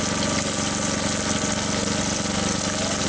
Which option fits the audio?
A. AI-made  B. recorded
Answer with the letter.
B